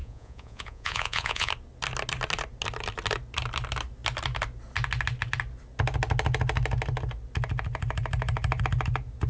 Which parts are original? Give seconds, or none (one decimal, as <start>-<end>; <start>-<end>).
1.5-9.3